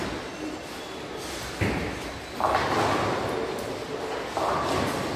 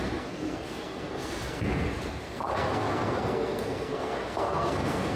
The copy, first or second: second